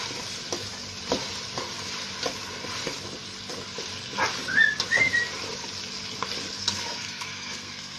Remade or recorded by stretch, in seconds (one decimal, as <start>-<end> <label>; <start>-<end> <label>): 0.0-6.6 recorded; 6.6-8.0 remade